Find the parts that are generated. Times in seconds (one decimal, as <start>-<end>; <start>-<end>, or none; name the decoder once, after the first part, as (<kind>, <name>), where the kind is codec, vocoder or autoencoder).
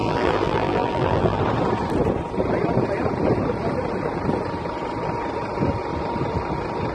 0.0-1.4 (vocoder, BigVGAN v2)